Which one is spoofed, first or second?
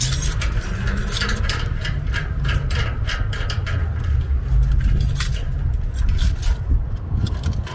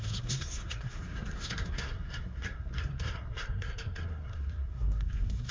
second